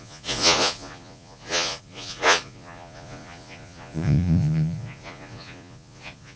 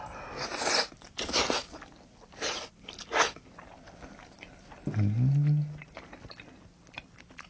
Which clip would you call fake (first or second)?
first